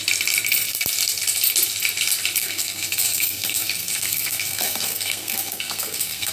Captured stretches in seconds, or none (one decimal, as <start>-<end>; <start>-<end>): 0.0-2.4